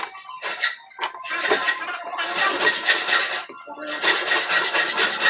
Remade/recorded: recorded